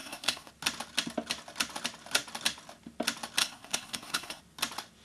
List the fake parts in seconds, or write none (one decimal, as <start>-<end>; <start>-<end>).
0.0-0.5; 3.4-4.4

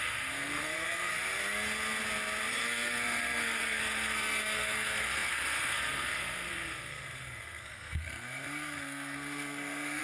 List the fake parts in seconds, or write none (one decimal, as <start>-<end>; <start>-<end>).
0.0-1.1; 2.5-10.0

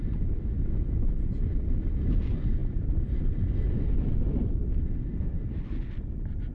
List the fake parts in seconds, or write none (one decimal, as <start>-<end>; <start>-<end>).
none